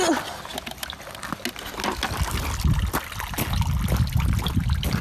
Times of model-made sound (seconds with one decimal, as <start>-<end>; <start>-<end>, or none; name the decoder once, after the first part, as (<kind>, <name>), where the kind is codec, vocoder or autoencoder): none